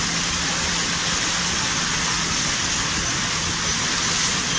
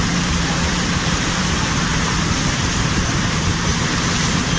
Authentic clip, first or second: first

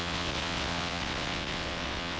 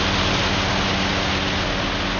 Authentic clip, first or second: second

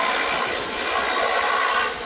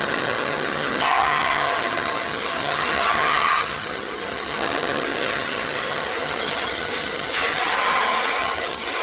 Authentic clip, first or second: first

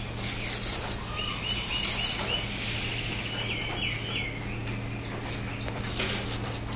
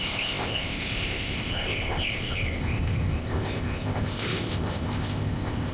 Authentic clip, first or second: first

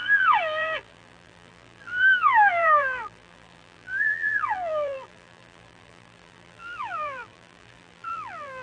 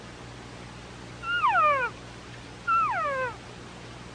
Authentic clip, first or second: second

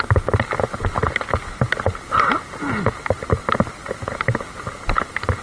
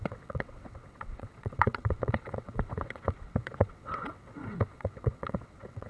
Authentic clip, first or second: first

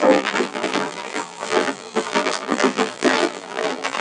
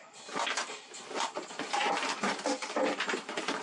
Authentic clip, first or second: second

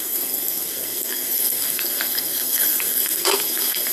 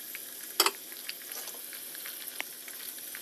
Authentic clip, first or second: second